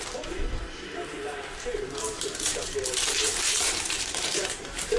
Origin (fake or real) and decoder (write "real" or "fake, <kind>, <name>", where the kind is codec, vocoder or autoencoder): fake, vocoder, BigVGAN v2